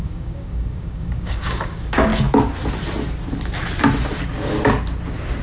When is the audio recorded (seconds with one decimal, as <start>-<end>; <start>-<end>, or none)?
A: 2.1-5.4